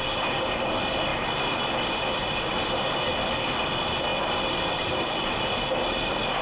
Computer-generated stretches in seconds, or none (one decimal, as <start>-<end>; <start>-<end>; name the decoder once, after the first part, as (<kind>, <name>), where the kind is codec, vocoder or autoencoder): none

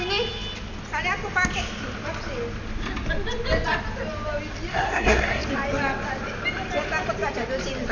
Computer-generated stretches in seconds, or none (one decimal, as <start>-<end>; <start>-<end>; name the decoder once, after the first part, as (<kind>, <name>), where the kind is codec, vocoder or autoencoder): 4.7-5.4 (codec, SNAC)

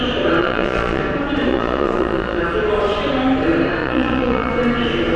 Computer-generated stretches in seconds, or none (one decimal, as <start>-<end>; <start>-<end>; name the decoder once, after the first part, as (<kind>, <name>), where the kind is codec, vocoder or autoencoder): 0.4-1.0 (vocoder, Vocos); 1.5-2.4; 3.8-4.5

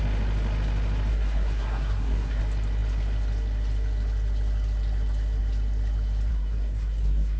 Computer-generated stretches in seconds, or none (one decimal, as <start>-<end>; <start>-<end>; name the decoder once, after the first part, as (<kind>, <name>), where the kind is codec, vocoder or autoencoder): 1.1-2.4 (codec, SNAC); 6.3-7.4

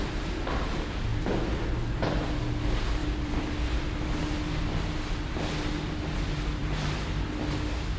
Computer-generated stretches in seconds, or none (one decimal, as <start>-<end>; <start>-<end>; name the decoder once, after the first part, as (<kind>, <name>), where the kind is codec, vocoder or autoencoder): 3.0-4.2 (vocoder, BigVGAN v2); 6.6-7.1

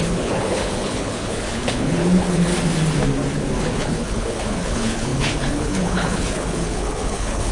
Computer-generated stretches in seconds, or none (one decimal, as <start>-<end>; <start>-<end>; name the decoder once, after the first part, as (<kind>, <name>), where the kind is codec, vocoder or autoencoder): 0.0-2.5 (codec, HILCodec); 3.6-7.5